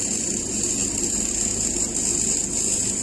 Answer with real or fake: real